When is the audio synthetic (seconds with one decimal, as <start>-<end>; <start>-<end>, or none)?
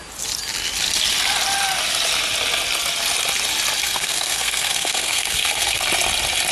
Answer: 3.8-5.8